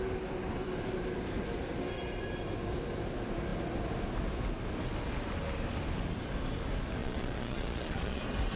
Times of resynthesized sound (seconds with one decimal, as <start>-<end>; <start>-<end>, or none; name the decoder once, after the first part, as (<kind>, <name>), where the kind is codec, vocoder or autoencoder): 7.0-8.2 (vocoder, Vocos)